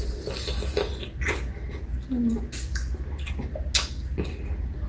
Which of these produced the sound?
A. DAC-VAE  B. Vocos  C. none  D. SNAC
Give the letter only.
C